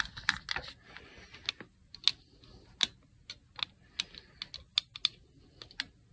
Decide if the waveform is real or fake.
real